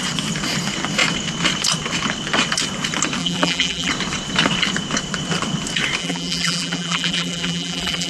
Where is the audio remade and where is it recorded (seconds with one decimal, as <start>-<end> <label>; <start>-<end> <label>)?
0.0-3.2 recorded; 3.2-3.9 remade; 3.9-6.0 recorded; 6.0-8.1 remade